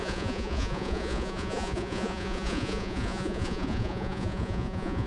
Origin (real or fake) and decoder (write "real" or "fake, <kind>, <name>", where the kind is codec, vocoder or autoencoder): fake, vocoder, Vocos